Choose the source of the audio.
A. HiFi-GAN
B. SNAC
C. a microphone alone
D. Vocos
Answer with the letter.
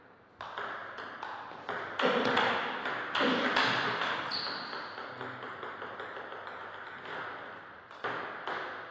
C